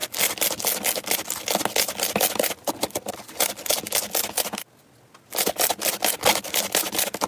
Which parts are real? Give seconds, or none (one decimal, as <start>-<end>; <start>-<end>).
0.0-7.3